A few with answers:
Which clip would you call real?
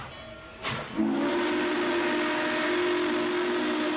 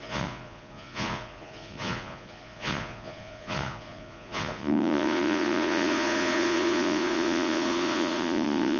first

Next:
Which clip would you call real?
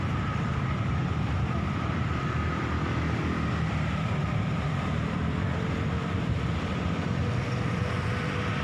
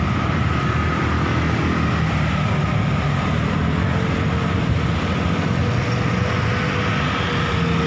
second